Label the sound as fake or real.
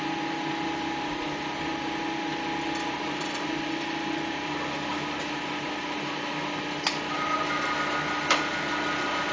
real